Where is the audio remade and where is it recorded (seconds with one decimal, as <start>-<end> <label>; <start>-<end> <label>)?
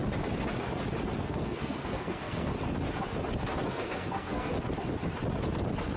0.0-1.2 recorded; 1.2-2.5 remade; 2.5-3.7 recorded; 3.7-4.5 remade; 4.5-6.0 recorded